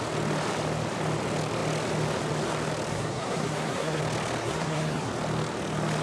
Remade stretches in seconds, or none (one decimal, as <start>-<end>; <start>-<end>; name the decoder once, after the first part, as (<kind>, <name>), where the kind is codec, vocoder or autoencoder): 2.9-4.0 (codec, SNAC); 4.4-5.1